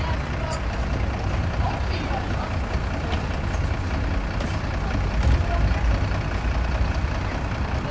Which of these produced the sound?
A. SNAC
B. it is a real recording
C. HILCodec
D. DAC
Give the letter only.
B